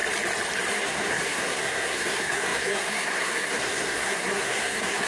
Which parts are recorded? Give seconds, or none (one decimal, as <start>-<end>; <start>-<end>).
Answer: 0.0-0.7